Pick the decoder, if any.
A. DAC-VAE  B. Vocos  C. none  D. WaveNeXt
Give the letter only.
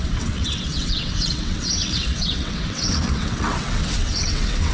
D